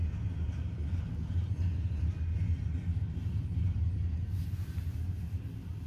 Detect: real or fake real